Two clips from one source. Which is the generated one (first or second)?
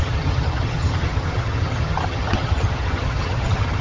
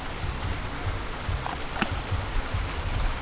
first